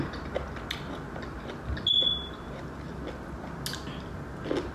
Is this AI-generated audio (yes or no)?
no